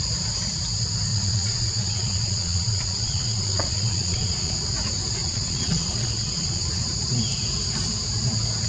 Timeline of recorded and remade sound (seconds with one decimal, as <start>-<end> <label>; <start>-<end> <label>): 0.0-1.1 recorded; 1.1-4.5 remade; 4.5-5.2 recorded; 5.2-6.8 remade; 6.8-8.7 recorded